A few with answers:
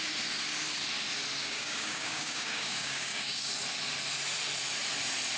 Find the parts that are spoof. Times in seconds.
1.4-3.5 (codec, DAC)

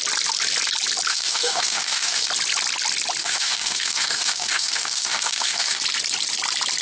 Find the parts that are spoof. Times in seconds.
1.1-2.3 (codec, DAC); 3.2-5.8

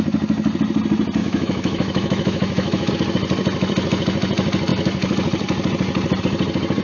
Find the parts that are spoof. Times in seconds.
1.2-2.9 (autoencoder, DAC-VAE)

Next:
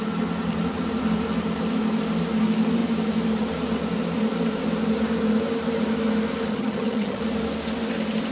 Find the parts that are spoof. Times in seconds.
6.5-7.2 (vocoder, HiFi-GAN)

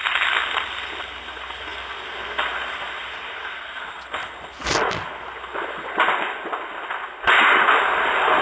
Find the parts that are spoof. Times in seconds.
none